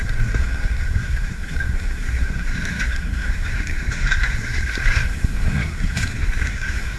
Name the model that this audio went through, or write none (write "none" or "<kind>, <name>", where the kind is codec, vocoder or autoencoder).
codec, SNAC